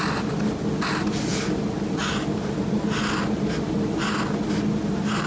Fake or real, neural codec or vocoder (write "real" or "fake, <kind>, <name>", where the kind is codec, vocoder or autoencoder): real